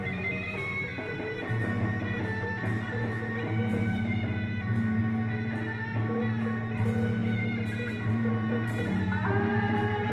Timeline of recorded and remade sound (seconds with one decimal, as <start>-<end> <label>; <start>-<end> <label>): 0.0-5.0 remade; 5.0-6.0 recorded; 6.0-10.1 remade